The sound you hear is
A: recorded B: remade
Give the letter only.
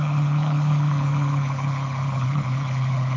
B